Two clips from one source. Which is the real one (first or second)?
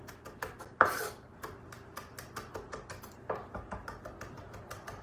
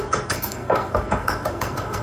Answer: first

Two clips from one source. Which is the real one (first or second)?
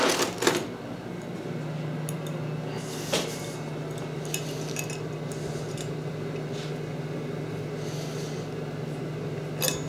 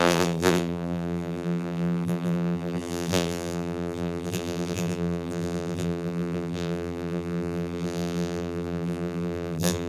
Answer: first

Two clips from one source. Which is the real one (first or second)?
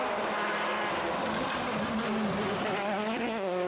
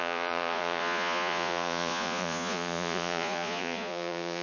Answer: first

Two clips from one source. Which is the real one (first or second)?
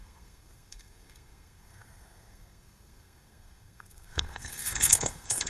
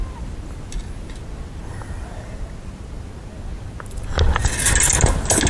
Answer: second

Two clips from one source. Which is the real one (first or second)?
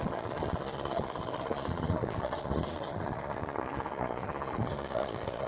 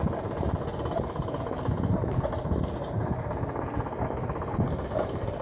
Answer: second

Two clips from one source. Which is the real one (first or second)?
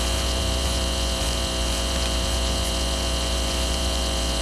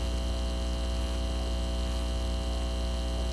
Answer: second